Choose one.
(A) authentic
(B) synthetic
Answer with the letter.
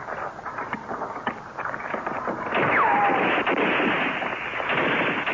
A